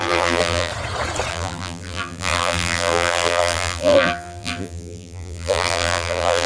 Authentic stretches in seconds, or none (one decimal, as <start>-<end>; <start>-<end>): 0.7-1.3